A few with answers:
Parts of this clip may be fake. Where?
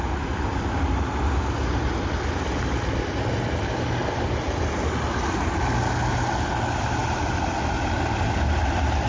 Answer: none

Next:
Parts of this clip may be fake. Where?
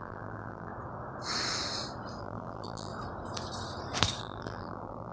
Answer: 0.0-0.7 (vocoder, BigVGAN v2); 2.2-2.9; 4.2-5.1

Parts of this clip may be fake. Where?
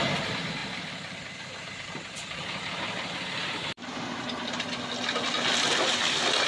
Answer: 0.6-4.4 (vocoder, BigVGAN v2)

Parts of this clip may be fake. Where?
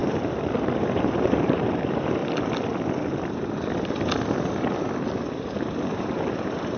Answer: 0.0-2.2 (vocoder, BigVGAN v2); 5.4-6.8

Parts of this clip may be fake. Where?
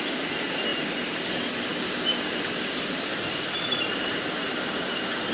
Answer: 0.7-3.9 (vocoder, BigVGAN v2)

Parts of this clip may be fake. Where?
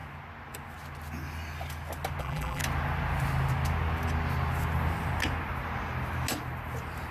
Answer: 2.2-2.6 (vocoder, BigVGAN v2)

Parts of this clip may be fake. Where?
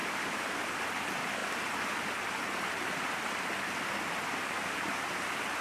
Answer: 0.0-0.9 (vocoder, BigVGAN v2)